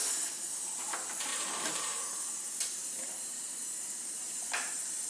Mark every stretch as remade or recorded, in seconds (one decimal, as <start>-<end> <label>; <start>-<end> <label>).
0.0-1.3 recorded; 1.3-4.4 remade; 4.4-5.1 recorded